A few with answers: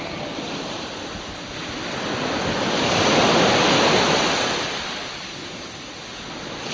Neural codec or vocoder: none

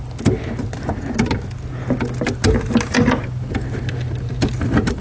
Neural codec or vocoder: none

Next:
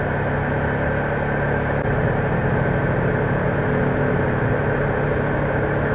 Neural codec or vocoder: none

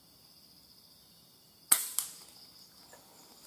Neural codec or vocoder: none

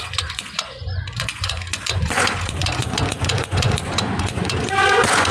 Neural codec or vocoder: vocoder, Vocos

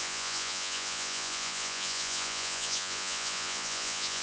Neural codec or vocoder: vocoder, Vocos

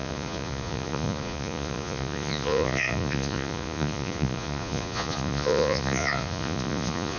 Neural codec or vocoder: vocoder, Vocos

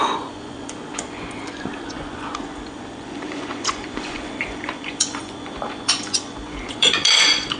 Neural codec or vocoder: vocoder, Vocos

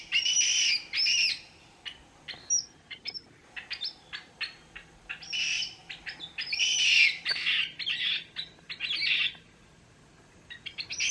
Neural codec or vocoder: none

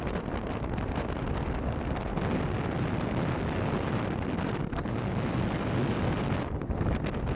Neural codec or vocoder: none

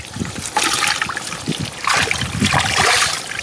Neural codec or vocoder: none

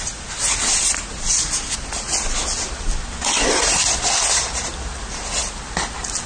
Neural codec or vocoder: none